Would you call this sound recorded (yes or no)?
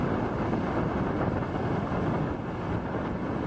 yes